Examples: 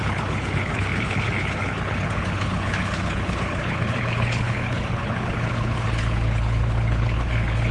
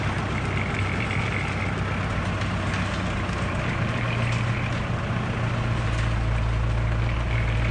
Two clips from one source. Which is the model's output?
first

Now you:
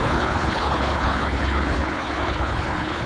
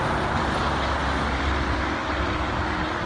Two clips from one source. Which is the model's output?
first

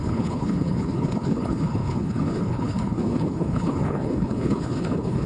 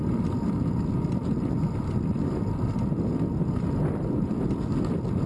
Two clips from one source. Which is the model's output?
first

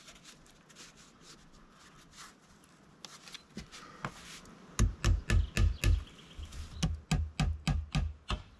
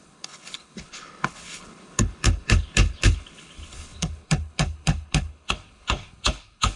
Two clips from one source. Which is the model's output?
second